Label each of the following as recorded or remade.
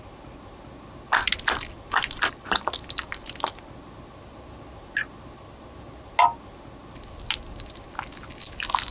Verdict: recorded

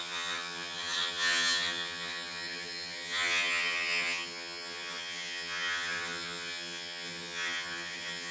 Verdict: remade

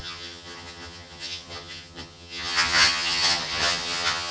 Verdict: remade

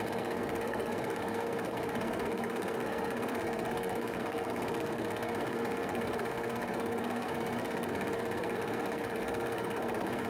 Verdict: remade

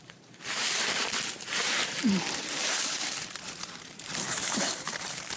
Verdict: remade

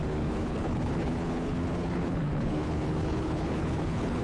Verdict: remade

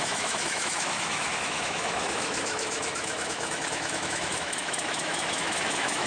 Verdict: remade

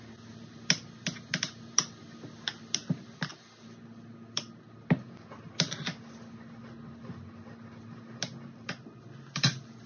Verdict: recorded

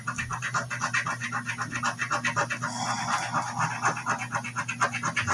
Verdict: recorded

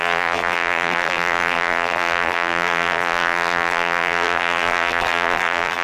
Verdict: remade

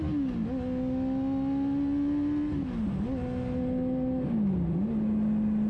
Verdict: recorded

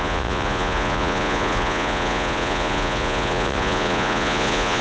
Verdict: remade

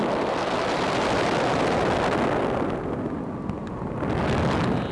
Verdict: recorded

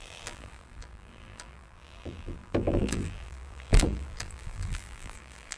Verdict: remade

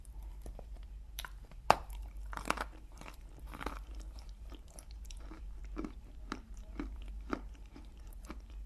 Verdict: remade